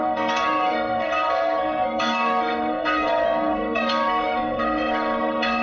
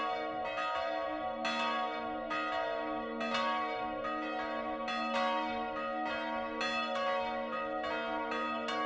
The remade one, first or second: first